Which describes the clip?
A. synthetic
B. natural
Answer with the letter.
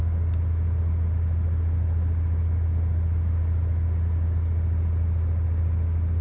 B